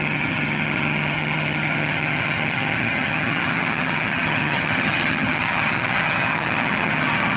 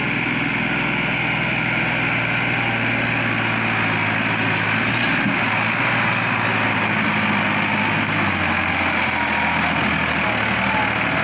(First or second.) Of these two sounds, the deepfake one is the first